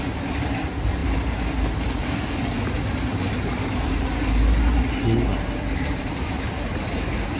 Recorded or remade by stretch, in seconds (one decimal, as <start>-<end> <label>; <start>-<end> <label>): 0.0-7.4 recorded

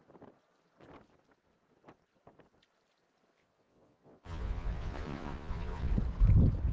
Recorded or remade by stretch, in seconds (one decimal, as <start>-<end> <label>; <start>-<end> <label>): 0.0-3.4 recorded; 3.4-5.9 remade; 5.9-6.7 recorded

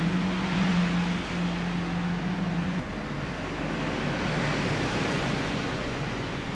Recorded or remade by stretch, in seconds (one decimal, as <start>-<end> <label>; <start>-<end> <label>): 0.0-0.7 remade; 0.7-2.2 recorded; 2.2-2.9 remade; 2.9-5.1 recorded; 5.1-6.5 remade

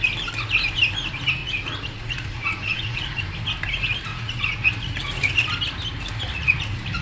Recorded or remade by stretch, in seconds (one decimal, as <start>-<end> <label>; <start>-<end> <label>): 0.0-1.4 recorded; 1.4-3.2 remade; 3.2-4.1 recorded; 4.1-5.3 remade; 5.3-6.3 recorded; 6.3-7.0 remade

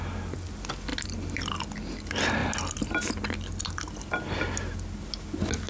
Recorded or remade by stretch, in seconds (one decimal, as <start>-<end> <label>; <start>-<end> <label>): 0.0-5.7 recorded

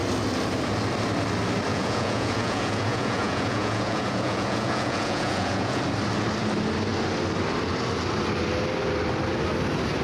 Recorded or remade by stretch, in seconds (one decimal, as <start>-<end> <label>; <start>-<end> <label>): 0.0-1.7 recorded; 1.7-5.8 remade; 5.8-10.0 recorded